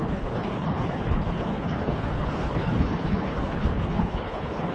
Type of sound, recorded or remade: remade